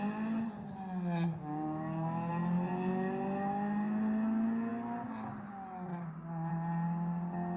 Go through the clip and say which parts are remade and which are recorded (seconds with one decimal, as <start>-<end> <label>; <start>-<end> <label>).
0.0-1.3 recorded; 1.3-2.3 remade; 2.3-5.9 recorded; 5.9-6.5 remade; 6.5-7.6 recorded